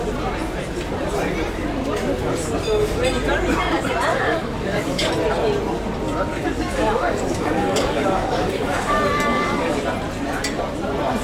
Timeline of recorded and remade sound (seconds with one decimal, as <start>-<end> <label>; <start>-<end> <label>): 0.0-4.1 recorded; 4.1-5.1 remade; 5.1-6.3 recorded; 6.3-9.8 remade; 9.8-11.2 recorded